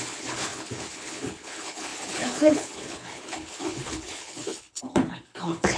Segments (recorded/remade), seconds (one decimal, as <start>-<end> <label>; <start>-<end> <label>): 0.0-5.8 remade